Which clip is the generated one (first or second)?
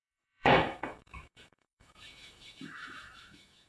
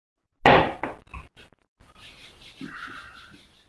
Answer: first